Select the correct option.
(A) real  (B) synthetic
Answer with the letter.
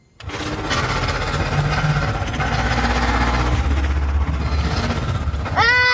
A